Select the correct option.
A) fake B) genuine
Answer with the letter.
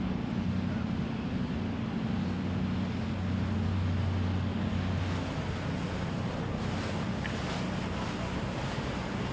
B